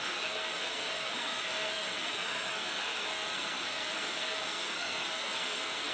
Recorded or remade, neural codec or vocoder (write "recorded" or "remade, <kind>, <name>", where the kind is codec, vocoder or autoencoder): remade, codec, SNAC